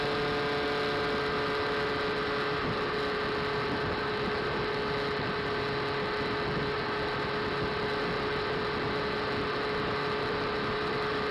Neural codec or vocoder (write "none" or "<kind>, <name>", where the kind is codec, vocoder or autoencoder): none